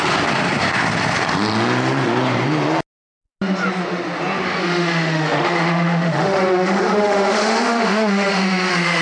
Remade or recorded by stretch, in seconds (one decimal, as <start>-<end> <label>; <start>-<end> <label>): 0.0-4.6 recorded; 4.6-9.0 remade